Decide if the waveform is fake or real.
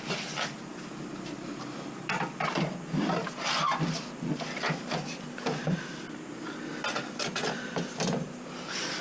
real